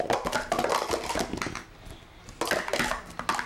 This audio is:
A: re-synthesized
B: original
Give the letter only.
B